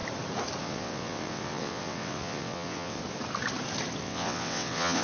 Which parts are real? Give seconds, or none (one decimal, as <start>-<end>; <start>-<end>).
0.0-0.6; 3.0-4.0